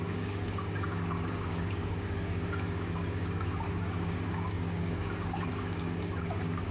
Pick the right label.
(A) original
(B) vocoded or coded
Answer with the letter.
B